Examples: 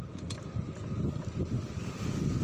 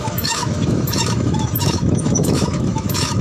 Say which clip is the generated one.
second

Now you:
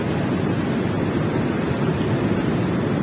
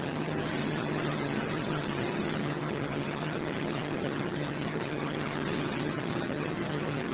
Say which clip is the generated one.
second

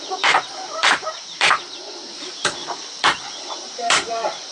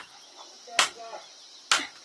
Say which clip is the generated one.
first